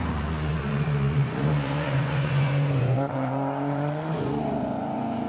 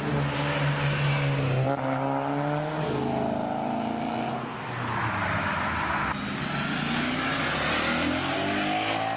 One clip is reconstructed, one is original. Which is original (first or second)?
second